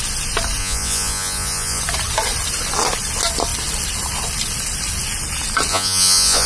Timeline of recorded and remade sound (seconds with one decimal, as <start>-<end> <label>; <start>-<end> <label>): 0.0-0.6 recorded; 0.6-1.8 remade; 1.8-5.7 recorded; 5.7-6.5 remade